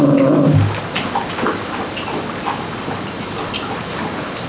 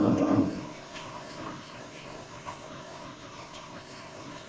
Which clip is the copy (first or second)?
second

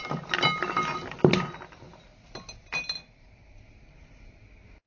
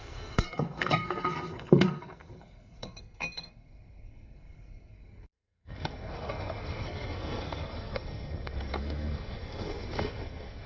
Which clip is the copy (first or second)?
second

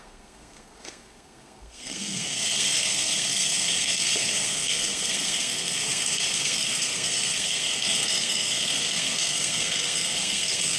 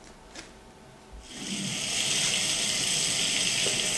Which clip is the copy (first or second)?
first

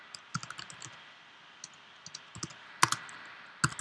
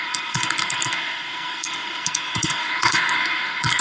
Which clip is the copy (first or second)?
second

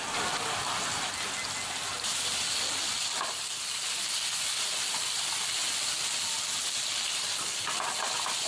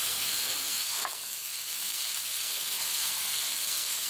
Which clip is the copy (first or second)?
second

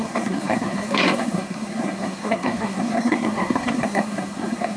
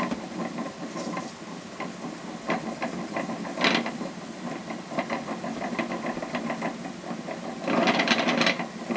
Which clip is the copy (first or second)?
first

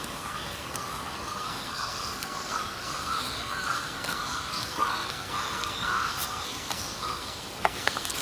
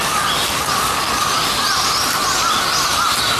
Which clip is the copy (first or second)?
first